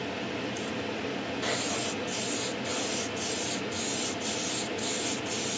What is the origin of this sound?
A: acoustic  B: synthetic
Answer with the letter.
A